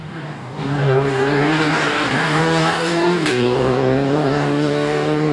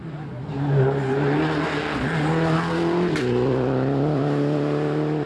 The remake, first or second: first